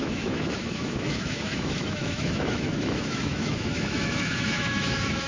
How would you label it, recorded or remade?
remade